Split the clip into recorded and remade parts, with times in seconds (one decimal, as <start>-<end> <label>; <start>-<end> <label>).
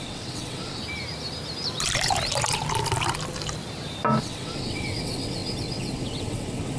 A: 0.0-0.8 remade; 0.8-4.2 recorded; 4.2-6.8 remade